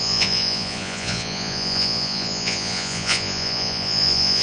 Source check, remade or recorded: remade